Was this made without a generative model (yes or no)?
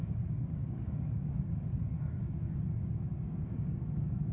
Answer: no